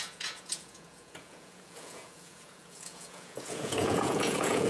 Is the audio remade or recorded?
remade